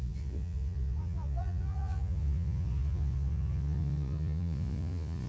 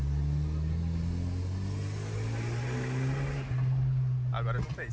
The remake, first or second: first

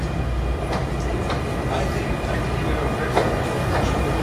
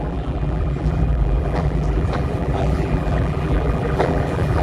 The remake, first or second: second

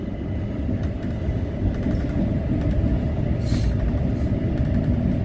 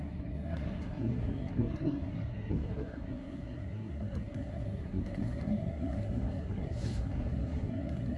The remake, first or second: second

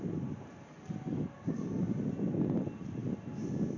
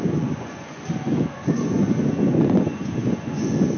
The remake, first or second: second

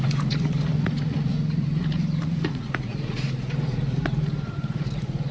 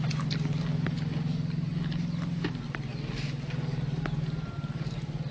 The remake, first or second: first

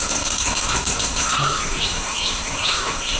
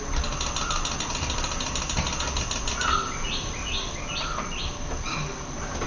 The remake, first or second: first